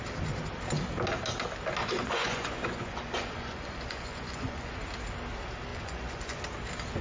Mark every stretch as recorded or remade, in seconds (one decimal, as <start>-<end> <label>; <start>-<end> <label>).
0.0-1.8 recorded; 1.8-4.7 remade; 4.7-5.7 recorded; 5.7-6.4 remade; 6.4-7.0 recorded